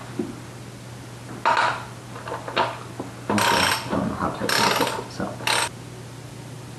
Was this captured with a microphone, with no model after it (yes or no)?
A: yes